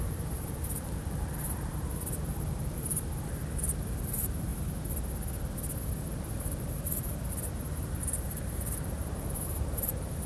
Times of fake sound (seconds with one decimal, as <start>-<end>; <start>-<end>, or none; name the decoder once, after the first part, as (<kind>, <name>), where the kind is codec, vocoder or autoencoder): 0.0-4.5 (vocoder, BigVGAN v2); 6.0-10.3